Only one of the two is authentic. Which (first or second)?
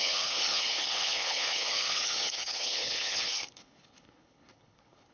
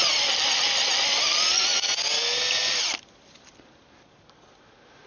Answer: second